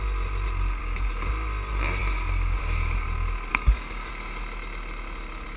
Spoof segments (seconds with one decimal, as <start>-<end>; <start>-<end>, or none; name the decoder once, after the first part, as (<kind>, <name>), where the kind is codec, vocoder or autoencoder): 0.8-1.3 (codec, DAC); 3.5-4.1